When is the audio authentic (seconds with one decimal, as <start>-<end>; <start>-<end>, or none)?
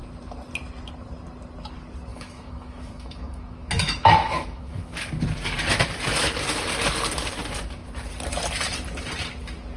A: 0.0-2.1; 5.1-9.8